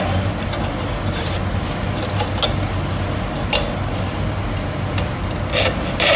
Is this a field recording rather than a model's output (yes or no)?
yes